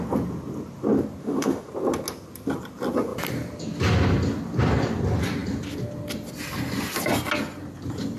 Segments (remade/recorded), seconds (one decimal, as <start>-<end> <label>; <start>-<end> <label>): 0.0-1.2 recorded; 1.2-1.7 remade; 1.7-8.2 recorded